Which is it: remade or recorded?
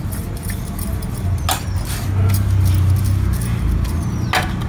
recorded